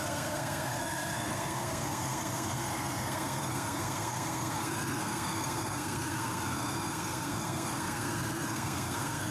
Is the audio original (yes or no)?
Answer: no